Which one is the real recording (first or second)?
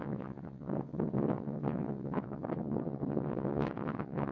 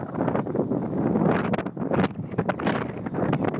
second